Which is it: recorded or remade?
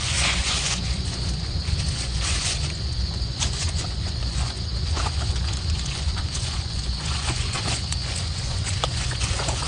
remade